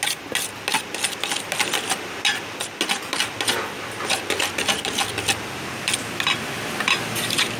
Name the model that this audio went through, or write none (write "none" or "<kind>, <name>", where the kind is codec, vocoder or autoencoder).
none